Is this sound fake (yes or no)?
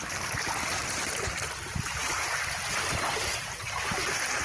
no